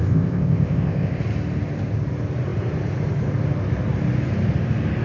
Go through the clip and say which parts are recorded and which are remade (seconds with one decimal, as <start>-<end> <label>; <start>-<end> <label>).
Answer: 0.0-1.2 remade; 1.2-5.0 recorded